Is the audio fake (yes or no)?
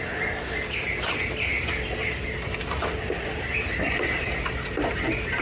no